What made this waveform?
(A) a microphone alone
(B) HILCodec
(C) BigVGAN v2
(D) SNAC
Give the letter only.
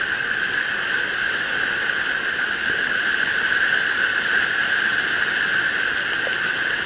A